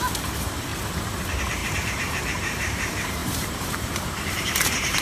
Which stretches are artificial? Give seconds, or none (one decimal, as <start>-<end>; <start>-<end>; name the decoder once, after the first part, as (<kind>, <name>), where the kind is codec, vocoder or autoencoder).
0.0-0.7 (vocoder, BigVGAN v2); 1.2-5.0